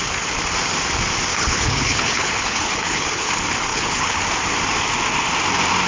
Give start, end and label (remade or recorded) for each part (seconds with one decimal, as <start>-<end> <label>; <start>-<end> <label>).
0.0-1.3 recorded; 1.3-3.3 remade; 3.3-3.7 recorded; 3.7-4.2 remade; 4.2-5.9 recorded